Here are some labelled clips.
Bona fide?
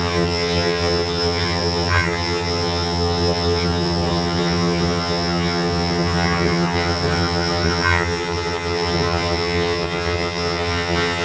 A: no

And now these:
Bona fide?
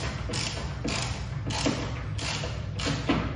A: yes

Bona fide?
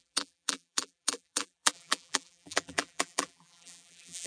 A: no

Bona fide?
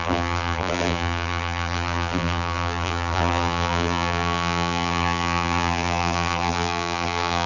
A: no